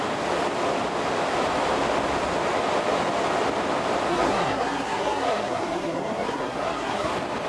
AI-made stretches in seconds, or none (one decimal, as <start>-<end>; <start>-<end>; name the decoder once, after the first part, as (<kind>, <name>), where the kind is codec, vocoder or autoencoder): 4.1-7.1 (codec, SNAC)